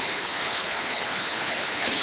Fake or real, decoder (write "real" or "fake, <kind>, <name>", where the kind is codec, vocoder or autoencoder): fake, codec, HILCodec